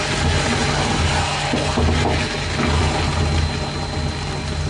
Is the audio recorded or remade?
recorded